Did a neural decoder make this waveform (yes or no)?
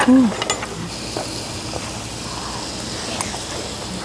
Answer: no